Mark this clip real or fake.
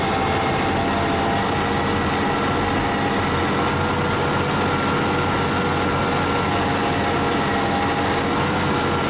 real